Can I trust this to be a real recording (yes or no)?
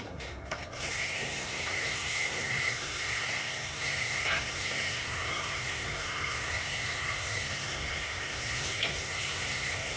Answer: no